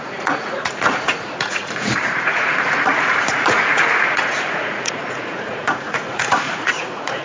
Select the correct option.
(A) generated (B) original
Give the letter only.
A